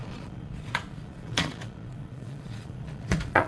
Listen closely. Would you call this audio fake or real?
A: fake